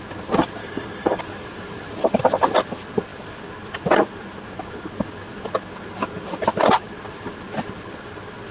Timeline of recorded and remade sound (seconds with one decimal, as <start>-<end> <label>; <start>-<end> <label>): 0.0-0.6 recorded; 0.6-1.2 remade; 1.2-8.5 recorded